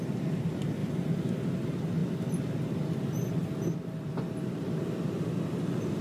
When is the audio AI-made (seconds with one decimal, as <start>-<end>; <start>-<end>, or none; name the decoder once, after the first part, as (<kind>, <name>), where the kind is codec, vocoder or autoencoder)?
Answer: none